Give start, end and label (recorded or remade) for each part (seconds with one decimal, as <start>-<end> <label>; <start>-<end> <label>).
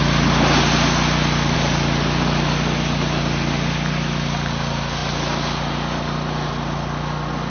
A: 0.0-7.5 recorded